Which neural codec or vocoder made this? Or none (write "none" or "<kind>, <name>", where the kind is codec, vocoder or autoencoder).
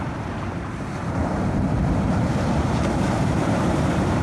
vocoder, BigVGAN v2